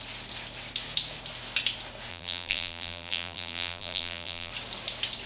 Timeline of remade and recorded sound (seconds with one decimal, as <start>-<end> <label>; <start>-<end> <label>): 0.0-2.1 recorded; 2.1-4.5 remade; 4.5-5.3 recorded